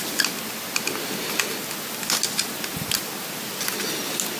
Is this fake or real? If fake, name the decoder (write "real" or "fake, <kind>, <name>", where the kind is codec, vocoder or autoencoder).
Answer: real